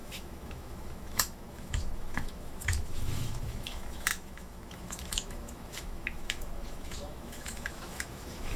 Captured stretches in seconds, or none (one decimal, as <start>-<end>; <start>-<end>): none